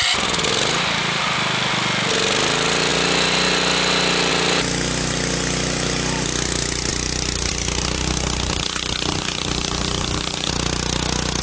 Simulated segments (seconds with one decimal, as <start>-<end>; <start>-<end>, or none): none

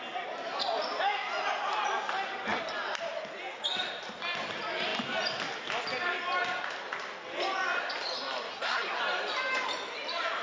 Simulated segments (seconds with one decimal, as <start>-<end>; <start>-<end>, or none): 8.5-9.0